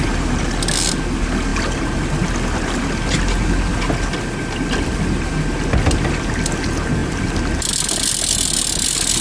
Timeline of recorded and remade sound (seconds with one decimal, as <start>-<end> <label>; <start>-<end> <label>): 0.0-9.2 recorded